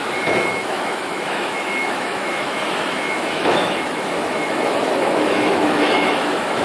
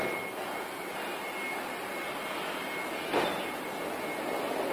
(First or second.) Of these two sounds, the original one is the second